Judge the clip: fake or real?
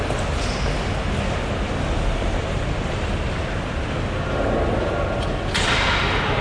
real